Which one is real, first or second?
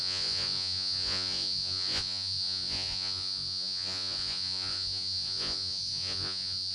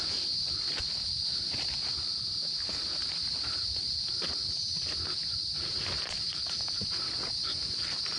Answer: second